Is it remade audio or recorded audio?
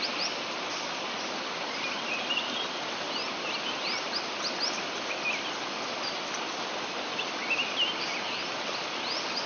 recorded